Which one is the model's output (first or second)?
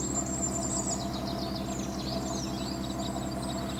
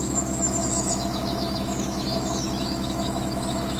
second